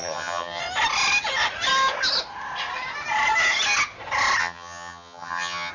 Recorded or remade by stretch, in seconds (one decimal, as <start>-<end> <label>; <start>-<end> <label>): 0.0-0.6 remade; 0.6-4.4 recorded; 4.4-5.7 remade